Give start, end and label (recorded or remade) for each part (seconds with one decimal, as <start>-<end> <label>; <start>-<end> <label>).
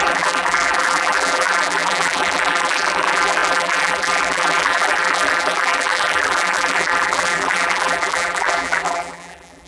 0.0-9.7 remade